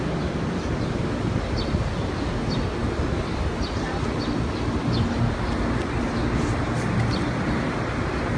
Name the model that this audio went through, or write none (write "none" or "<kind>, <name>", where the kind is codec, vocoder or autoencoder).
none